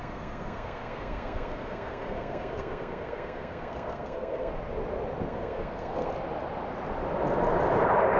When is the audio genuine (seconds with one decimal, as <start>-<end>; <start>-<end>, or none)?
4.5-5.3; 6.1-8.2